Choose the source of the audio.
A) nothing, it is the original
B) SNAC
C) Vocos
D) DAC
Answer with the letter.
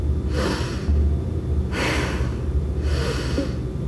A